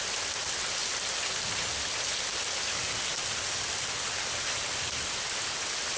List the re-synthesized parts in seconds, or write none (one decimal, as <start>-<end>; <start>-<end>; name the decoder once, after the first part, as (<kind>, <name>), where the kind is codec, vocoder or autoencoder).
none